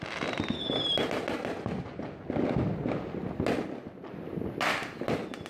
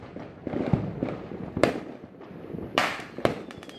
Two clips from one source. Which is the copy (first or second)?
second